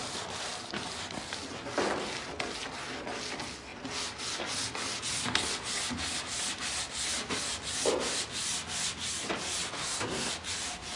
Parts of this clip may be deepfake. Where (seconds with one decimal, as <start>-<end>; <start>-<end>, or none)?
9.8-10.3